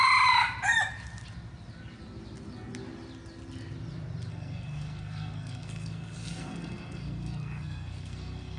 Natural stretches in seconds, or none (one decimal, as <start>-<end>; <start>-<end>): 0.0-4.3